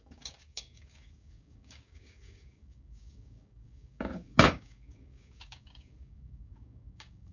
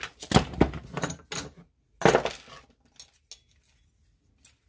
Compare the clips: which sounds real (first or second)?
second